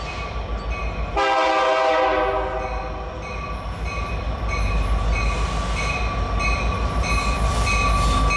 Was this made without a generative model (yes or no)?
yes